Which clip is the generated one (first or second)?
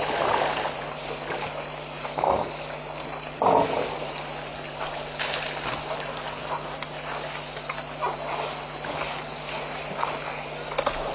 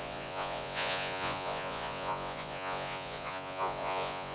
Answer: second